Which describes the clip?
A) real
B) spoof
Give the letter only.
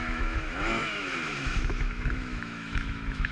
B